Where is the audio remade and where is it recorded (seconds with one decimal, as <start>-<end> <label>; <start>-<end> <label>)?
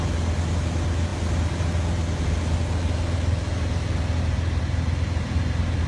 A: 0.0-5.9 recorded